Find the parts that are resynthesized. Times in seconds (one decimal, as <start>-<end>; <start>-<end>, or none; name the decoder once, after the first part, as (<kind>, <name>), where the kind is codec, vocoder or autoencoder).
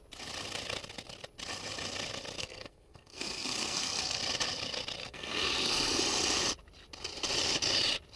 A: 2.4-4.2 (codec, SNAC); 5.0-6.0